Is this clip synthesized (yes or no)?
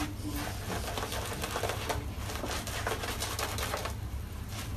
no